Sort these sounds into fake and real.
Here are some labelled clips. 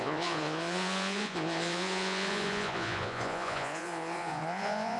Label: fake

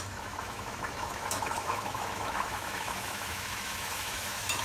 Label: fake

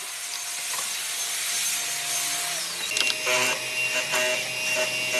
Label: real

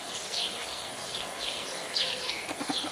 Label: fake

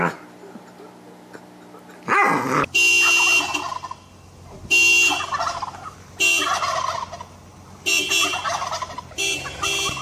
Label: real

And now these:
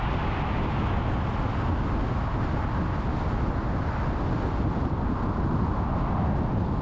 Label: real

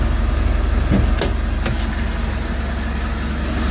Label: real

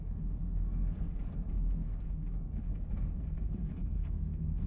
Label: fake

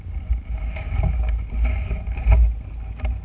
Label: real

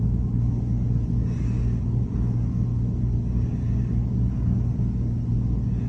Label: real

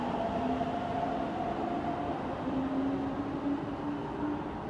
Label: real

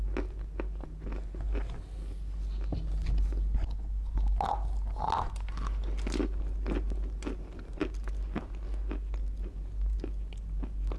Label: real